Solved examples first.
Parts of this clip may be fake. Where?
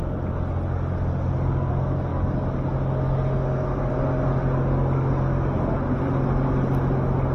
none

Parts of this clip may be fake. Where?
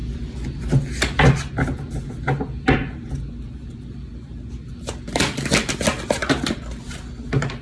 none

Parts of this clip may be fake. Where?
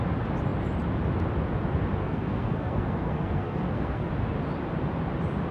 2.0-4.1 (codec, SNAC)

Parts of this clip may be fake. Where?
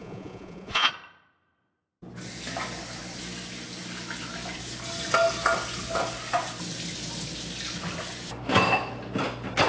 0.0-0.9 (vocoder, Vocos)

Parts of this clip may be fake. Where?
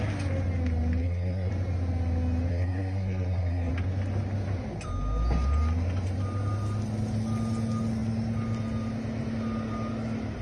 1.0-1.5 (codec, SNAC); 2.5-3.7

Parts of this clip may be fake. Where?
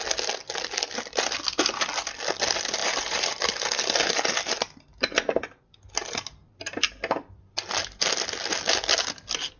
2.8-3.7 (vocoder, BigVGAN v2)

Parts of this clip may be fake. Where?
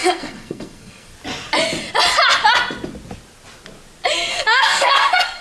0.0-1.1 (codec, SNAC); 4.3-5.4